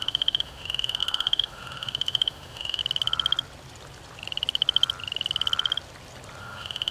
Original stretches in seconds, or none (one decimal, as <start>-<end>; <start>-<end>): 2.8-6.4

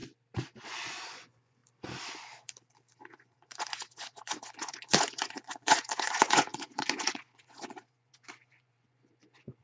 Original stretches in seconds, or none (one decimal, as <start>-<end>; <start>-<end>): 0.0-0.6; 1.6-3.0

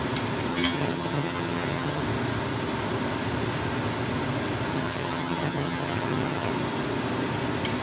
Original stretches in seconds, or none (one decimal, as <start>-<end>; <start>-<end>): 0.0-0.5; 2.0-4.7; 6.5-7.8

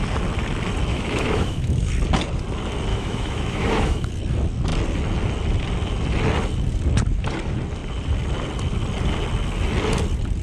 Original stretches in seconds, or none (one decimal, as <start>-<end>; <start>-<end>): 0.0-0.9; 1.9-2.9; 4.1-10.4

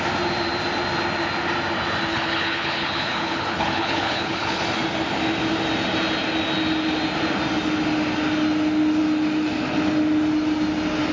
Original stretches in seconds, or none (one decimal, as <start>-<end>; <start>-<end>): 0.0-2.1; 4.6-11.1

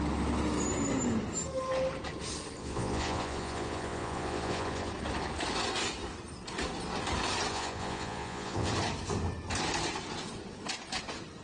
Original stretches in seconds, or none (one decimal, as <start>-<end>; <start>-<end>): 0.0-2.6; 4.9-7.5; 8.7-11.4

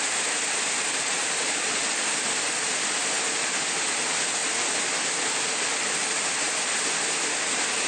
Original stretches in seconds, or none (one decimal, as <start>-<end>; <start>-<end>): 0.0-7.9